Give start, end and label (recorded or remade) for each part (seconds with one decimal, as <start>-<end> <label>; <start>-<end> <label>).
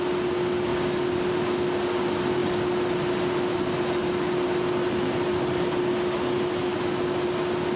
0.0-7.8 recorded